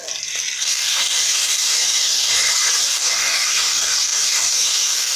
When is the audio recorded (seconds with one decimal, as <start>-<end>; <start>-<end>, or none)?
0.0-0.6; 2.3-2.8